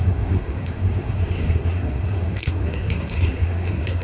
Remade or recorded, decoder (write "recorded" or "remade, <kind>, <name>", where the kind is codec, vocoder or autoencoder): remade, codec, SNAC